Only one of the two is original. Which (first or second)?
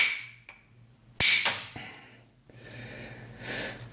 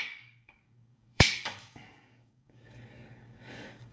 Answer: first